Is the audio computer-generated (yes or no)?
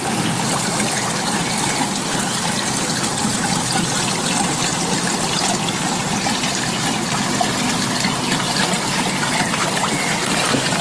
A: no